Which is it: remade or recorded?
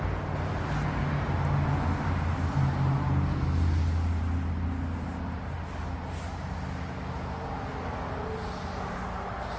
recorded